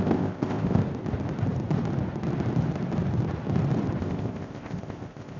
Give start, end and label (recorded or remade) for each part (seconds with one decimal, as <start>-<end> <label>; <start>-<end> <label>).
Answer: 0.0-0.8 remade; 0.8-4.0 recorded; 4.0-5.4 remade